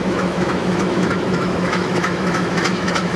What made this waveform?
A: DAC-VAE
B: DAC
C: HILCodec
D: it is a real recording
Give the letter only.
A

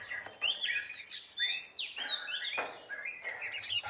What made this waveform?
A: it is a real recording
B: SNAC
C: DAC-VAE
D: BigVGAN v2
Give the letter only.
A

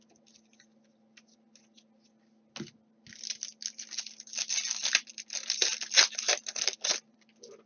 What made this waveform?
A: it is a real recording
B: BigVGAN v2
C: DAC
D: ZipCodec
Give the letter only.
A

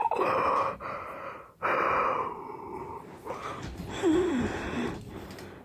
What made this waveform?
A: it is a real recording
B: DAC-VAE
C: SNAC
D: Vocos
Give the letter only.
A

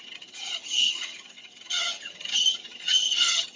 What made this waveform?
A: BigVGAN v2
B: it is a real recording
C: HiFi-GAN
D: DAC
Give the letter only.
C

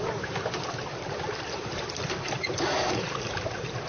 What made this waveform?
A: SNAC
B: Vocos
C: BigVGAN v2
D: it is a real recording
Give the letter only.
C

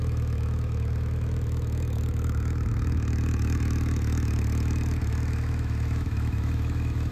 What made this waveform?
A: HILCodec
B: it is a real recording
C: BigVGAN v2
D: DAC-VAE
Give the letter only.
D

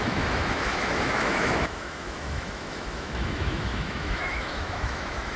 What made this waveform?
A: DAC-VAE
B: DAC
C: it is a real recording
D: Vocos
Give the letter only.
A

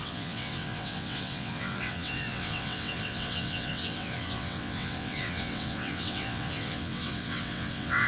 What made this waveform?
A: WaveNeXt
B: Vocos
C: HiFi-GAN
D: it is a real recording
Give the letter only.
A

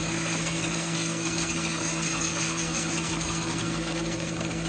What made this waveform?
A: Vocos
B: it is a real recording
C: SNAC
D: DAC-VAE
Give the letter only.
C